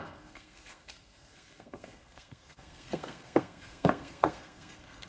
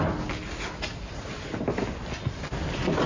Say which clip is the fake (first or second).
first